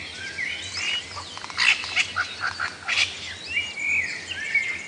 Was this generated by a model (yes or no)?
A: no